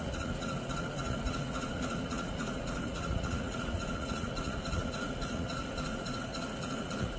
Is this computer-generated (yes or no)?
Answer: yes